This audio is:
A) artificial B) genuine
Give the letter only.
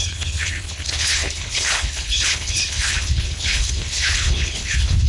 A